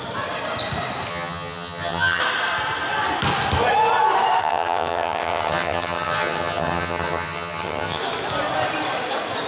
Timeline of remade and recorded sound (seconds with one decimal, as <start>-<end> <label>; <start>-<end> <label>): 0.0-1.1 recorded; 1.1-2.2 remade; 2.2-4.4 recorded; 4.4-8.0 remade; 8.0-9.5 recorded